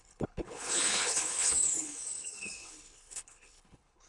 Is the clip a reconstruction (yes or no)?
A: yes